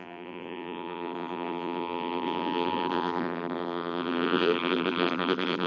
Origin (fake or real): fake